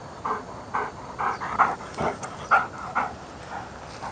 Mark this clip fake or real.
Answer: real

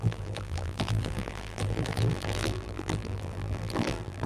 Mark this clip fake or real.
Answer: fake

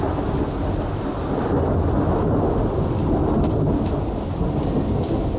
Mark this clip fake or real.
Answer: real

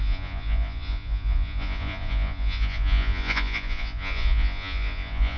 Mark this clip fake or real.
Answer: fake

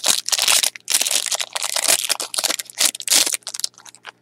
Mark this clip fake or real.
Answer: real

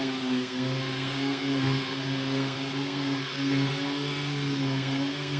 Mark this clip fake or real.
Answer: fake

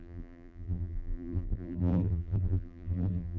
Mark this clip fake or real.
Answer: fake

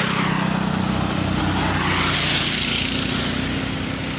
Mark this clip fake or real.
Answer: real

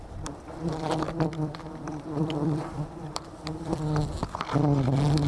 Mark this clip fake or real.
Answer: fake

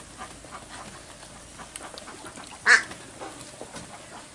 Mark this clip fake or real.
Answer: real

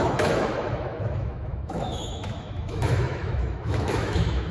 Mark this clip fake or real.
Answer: fake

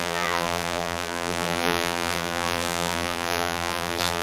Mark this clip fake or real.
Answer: fake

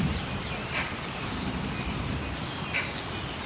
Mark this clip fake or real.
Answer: real